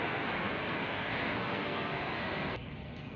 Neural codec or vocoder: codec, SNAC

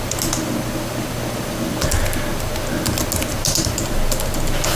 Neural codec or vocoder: none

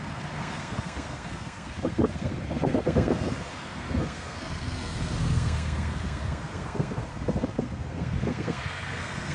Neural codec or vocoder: codec, SNAC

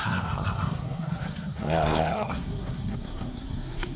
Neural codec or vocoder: codec, SNAC